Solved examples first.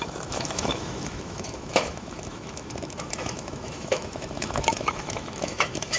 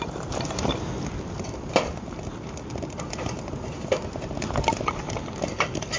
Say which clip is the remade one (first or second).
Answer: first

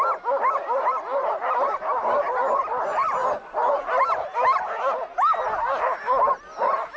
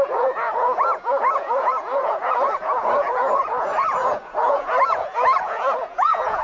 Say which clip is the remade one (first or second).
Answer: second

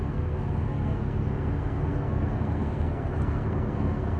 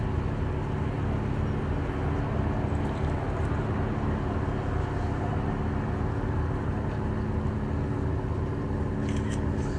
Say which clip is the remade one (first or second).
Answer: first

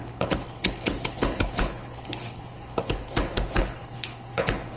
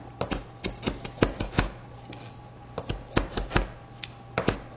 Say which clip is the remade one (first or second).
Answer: first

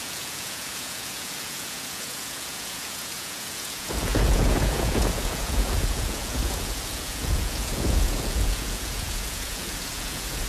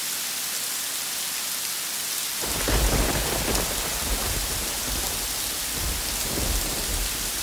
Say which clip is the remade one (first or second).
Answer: first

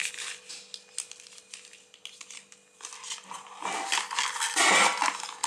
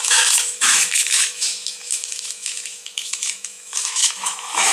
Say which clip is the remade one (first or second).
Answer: second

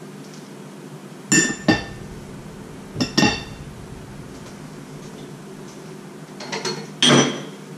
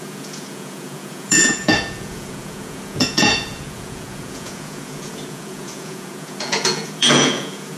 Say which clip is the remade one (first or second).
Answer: second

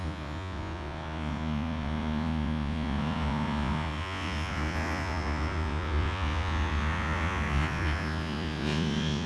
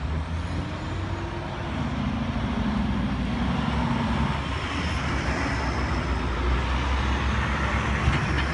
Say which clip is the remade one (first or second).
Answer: first